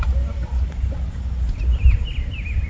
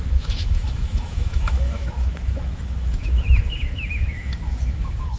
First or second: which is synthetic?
second